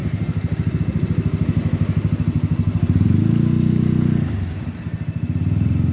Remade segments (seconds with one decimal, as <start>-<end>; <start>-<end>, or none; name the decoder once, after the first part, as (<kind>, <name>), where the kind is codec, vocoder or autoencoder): none